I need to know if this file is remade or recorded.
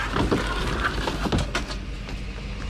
recorded